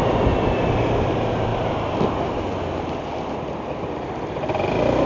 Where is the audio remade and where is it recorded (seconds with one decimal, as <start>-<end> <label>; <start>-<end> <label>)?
0.0-5.1 recorded